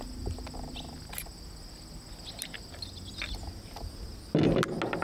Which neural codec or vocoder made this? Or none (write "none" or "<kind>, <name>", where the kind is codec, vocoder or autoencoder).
none